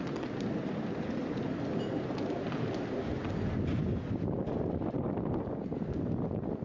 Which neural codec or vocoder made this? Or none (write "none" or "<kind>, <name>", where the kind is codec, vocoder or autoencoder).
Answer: none